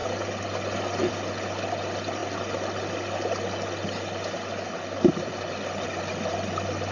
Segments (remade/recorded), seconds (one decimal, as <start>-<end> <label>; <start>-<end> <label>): 0.0-6.9 recorded